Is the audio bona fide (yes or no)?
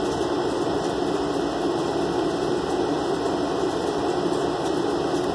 yes